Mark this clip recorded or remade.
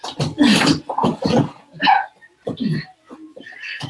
recorded